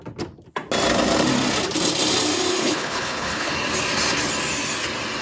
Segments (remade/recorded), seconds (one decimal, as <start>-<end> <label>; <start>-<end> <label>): 0.0-2.5 recorded; 2.5-3.5 remade; 3.5-5.2 recorded